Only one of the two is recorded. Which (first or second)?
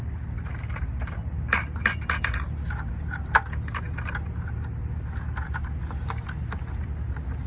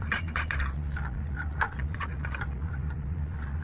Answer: first